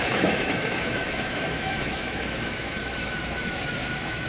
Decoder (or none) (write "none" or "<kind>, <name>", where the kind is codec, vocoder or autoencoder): autoencoder, DAC-VAE